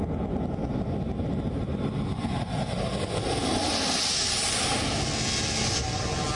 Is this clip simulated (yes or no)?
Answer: no